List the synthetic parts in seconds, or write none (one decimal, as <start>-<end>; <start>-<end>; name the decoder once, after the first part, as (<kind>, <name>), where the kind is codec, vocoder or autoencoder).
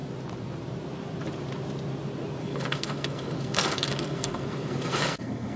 2.4-5.6 (codec, SNAC)